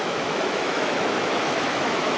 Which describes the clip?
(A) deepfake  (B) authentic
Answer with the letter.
A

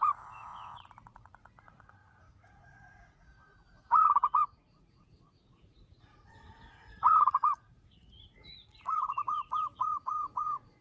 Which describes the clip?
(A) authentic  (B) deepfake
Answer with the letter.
B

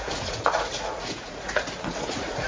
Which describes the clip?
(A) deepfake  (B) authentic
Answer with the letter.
A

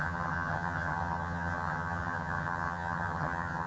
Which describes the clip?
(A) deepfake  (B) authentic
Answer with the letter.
A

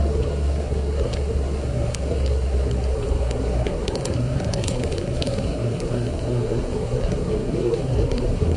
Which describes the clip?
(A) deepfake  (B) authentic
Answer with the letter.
A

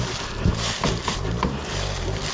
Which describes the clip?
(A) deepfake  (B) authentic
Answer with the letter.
B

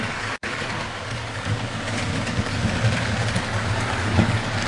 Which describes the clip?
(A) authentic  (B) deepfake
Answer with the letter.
B